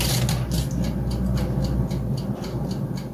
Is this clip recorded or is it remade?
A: recorded